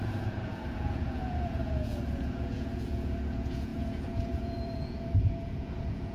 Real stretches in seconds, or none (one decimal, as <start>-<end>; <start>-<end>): none